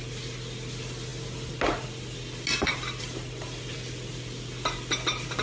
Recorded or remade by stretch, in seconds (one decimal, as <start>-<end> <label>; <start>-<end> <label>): 0.0-5.4 recorded